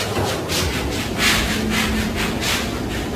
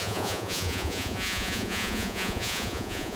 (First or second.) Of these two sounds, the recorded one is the first